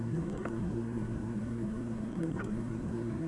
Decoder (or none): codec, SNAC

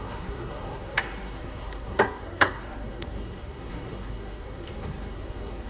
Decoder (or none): codec, SNAC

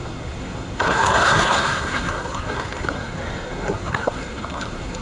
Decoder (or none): codec, SNAC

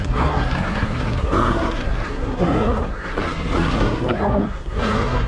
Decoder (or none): codec, SNAC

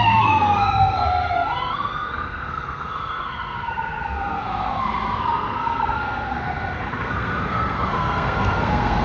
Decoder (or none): codec, SNAC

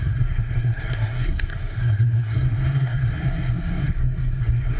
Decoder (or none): codec, SNAC